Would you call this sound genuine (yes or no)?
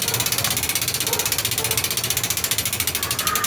yes